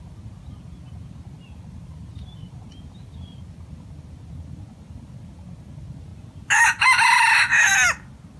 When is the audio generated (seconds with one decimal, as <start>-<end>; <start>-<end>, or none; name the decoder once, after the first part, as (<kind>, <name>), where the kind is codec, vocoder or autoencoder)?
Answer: none

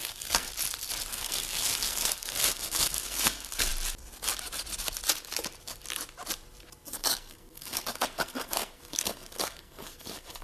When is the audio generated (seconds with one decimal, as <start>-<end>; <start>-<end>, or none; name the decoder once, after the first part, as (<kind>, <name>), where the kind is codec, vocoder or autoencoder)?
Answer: 0.0-0.5 (codec, SNAC); 1.1-3.7; 6.9-10.4

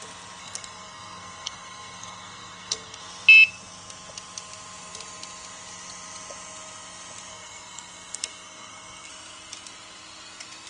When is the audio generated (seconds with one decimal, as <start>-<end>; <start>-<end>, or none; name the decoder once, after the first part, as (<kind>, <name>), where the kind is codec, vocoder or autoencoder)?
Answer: 0.4-3.0 (codec, SNAC); 7.3-9.1

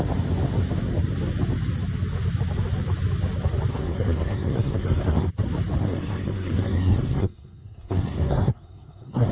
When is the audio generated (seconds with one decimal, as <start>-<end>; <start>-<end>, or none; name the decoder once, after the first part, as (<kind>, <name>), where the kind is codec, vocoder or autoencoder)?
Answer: 3.7-5.3 (codec, SNAC); 5.8-9.3

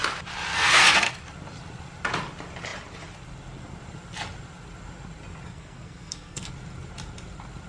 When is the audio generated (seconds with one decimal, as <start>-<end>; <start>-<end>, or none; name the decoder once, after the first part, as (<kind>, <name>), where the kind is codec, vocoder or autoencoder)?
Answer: 0.5-1.1 (codec, SNAC); 5.5-6.5

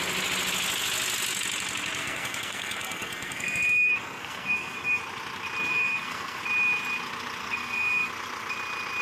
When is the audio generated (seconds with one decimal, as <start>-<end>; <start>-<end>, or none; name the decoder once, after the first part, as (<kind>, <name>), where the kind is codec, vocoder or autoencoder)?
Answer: 2.0-5.0 (codec, SNAC); 5.7-6.4; 7.4-8.1